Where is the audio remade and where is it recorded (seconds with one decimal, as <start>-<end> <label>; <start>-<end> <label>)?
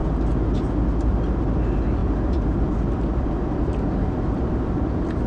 0.0-5.3 recorded